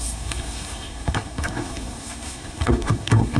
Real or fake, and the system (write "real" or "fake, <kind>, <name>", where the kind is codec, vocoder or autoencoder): fake, codec, SNAC